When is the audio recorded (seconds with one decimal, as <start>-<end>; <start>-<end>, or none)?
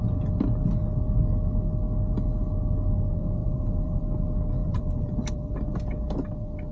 0.0-3.4; 4.0-4.6; 5.5-6.7